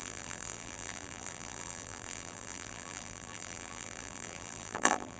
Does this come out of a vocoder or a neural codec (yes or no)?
yes